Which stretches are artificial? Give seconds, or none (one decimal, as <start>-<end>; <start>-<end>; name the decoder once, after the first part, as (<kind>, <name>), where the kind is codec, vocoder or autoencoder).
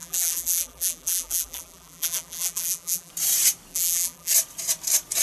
0.0-3.1 (vocoder, BigVGAN v2); 3.7-4.3